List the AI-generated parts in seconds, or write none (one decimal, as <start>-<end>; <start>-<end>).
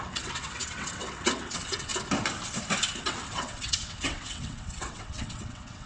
0.0-1.9; 3.0-5.9